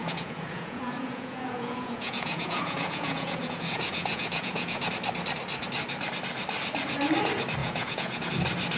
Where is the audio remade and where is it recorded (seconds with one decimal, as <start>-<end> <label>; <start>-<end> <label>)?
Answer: 0.0-4.9 remade; 4.9-7.6 recorded; 7.6-8.3 remade; 8.3-8.8 recorded